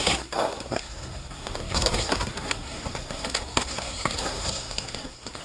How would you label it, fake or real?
fake